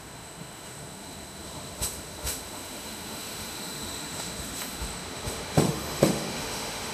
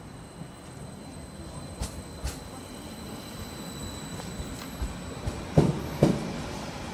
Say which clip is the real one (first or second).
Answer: second